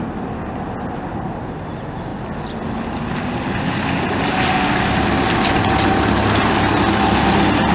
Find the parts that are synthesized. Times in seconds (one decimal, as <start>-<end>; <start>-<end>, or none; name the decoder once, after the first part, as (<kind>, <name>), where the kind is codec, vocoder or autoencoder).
none